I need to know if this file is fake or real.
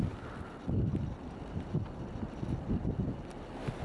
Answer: real